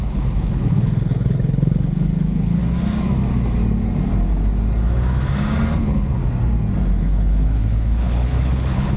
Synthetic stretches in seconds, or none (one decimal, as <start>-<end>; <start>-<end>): 0.0-2.6; 5.8-6.2; 7.0-9.0